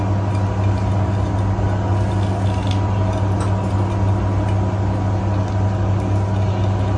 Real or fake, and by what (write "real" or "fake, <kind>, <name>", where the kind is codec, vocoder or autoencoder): real